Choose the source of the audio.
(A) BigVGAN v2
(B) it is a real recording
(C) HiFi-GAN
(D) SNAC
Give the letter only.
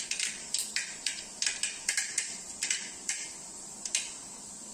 B